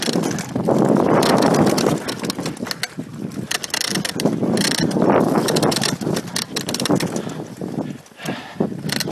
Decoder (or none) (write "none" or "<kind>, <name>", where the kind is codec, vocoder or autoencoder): none